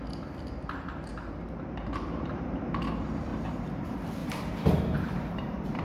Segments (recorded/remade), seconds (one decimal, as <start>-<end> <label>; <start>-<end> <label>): 0.0-1.1 recorded; 1.1-2.7 remade; 2.7-3.3 recorded; 3.3-3.8 remade; 3.8-4.2 recorded; 4.2-5.8 remade